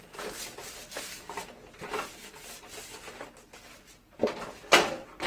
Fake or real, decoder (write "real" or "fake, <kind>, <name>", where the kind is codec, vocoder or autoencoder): fake, vocoder, BigVGAN v2